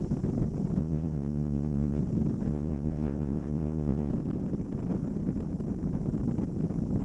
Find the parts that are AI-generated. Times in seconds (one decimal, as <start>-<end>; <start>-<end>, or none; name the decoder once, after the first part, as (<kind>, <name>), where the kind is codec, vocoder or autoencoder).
0.8-2.0 (vocoder, Vocos); 2.5-4.1